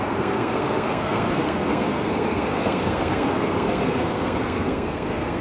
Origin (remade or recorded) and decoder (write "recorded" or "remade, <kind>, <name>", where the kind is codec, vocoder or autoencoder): remade, codec, SNAC